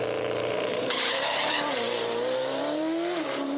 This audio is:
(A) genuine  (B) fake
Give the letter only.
B